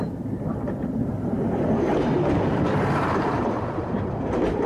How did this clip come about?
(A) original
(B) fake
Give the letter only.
B